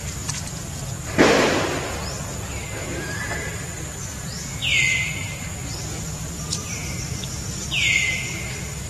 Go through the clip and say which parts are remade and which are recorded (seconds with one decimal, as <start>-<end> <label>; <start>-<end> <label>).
0.0-8.9 recorded